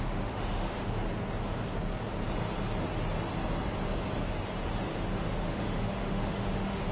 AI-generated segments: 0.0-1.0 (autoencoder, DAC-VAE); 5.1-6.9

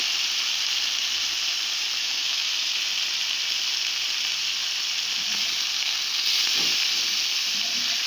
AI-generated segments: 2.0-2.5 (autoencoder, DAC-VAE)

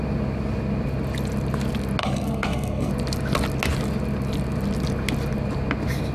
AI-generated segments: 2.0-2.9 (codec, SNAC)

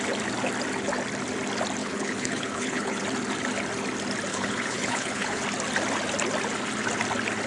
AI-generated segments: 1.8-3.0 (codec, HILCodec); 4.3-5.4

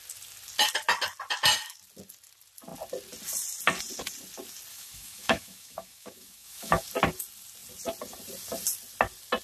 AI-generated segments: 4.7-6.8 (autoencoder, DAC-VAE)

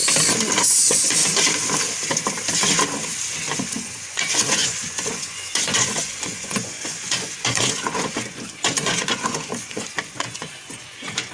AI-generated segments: 0.6-1.2 (vocoder, Vocos); 3.3-11.3

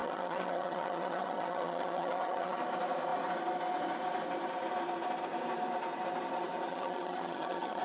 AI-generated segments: 0.0-2.6 (vocoder, HiFi-GAN); 6.7-7.8